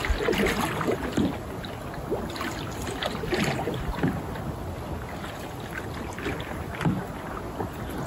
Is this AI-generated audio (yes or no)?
no